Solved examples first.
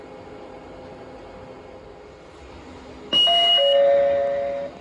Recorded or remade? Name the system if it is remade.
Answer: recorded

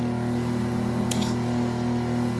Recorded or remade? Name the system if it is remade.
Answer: recorded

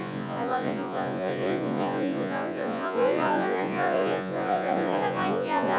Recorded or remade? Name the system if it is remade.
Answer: remade, vocoder, Vocos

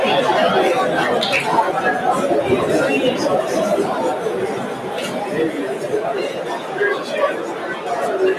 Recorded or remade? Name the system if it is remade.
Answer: recorded